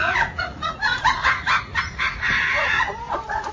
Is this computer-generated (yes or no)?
yes